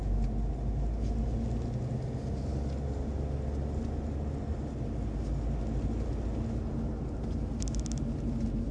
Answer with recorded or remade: recorded